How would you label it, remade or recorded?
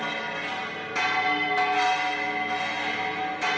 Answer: recorded